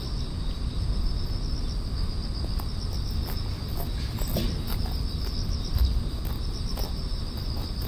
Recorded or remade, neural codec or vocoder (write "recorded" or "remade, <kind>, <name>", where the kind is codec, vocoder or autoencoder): recorded